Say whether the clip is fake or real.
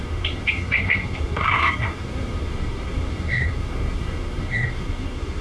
fake